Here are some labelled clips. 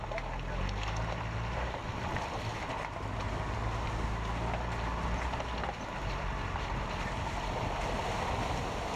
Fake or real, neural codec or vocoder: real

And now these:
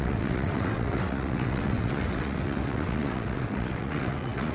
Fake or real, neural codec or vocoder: fake, vocoder, WaveNeXt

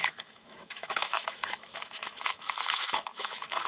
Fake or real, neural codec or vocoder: fake, autoencoder, DAC-VAE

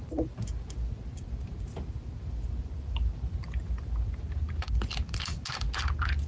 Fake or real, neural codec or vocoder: real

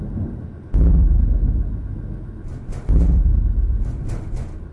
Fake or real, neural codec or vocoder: real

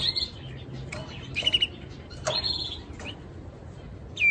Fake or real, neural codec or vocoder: real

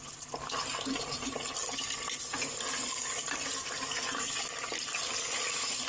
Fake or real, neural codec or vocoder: real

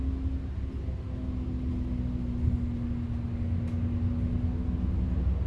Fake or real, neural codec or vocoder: real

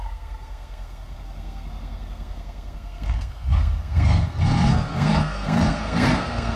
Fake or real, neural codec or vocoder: fake, codec, SNAC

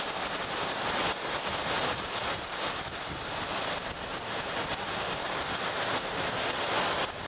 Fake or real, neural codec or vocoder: real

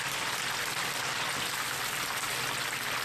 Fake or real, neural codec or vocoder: real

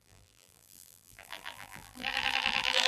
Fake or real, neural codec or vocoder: fake, vocoder, BigVGAN v2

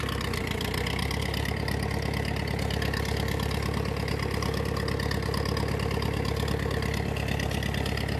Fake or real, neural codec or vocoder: real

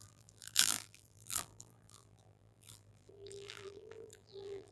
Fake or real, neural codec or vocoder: fake, vocoder, BigVGAN v2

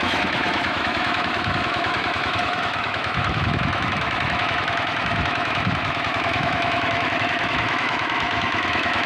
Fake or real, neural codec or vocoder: fake, autoencoder, DAC-VAE